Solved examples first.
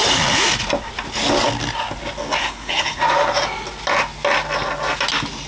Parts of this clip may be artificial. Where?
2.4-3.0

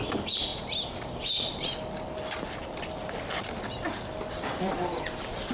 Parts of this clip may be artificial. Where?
none

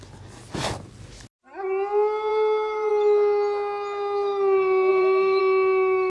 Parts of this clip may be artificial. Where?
2.3-2.9; 4.9-5.4

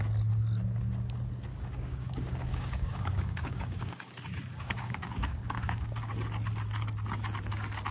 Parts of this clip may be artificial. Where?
1.5-4.1; 4.5-6.1